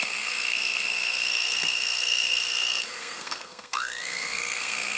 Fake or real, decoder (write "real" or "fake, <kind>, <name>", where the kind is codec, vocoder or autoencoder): fake, codec, SNAC